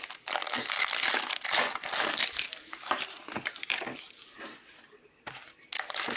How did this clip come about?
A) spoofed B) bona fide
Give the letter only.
B